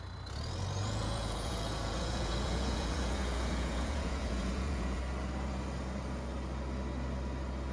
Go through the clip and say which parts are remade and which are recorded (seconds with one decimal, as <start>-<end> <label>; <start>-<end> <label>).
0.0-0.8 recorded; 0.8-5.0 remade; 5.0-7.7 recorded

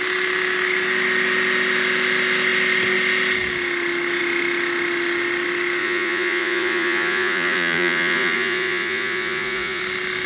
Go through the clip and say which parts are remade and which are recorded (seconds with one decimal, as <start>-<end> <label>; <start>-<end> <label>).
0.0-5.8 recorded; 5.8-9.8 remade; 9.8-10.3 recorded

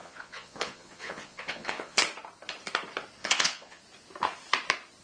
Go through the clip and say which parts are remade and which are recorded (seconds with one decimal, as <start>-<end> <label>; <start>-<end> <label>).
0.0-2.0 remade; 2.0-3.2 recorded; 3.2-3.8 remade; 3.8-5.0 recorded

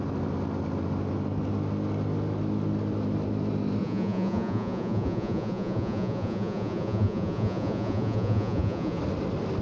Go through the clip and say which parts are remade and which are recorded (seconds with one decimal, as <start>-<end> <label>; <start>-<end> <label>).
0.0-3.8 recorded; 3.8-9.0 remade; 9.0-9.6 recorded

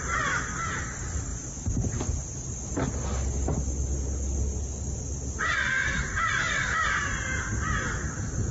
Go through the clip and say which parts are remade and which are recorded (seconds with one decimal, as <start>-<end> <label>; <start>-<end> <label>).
0.0-8.5 recorded

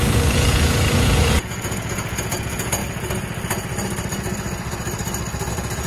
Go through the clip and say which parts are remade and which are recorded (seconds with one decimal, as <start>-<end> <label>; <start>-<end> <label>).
0.0-2.8 remade; 2.8-5.5 recorded; 5.5-5.9 remade

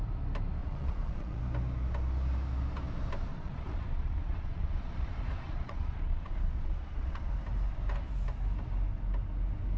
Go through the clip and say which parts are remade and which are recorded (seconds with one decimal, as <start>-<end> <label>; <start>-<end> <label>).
0.0-0.6 recorded; 0.6-1.4 remade; 1.4-3.3 recorded; 3.3-7.3 remade; 7.3-9.8 recorded

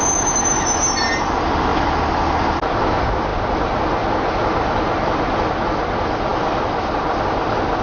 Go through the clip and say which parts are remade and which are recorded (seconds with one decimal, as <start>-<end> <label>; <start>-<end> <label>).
0.0-7.8 recorded